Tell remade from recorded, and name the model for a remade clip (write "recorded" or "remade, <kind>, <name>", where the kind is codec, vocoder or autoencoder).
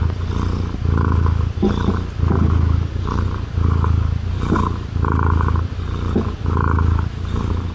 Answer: recorded